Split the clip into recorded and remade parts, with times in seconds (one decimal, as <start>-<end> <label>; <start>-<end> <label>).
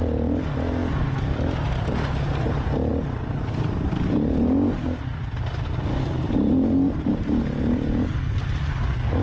0.0-9.2 recorded